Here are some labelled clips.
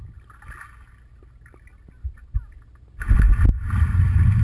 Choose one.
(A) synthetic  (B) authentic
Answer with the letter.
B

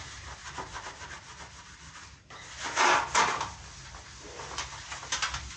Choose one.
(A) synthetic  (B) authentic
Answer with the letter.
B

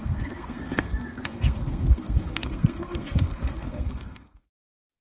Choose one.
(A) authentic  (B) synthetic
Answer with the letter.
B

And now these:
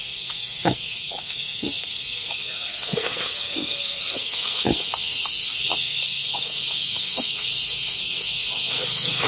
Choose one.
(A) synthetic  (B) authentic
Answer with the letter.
A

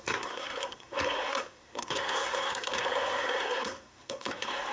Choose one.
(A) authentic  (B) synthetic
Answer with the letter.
B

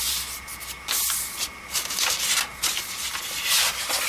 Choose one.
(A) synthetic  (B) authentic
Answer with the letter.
B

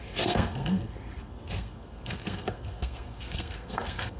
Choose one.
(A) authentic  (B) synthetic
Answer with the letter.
B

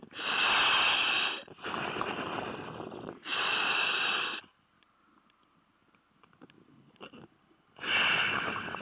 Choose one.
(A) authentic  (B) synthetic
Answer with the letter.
A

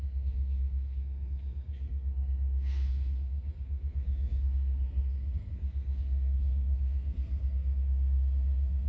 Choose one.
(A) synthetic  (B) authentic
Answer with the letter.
A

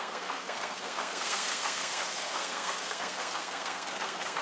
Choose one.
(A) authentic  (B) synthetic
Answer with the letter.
B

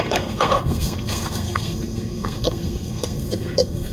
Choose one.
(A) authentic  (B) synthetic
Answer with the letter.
B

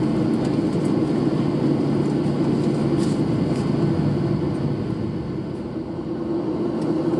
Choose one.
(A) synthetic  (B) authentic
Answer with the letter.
B